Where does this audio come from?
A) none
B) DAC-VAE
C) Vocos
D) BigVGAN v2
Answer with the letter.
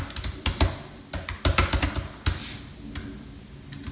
A